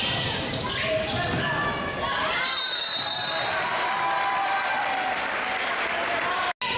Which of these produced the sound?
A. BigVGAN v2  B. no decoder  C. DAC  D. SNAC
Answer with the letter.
B